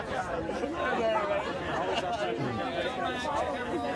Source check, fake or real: real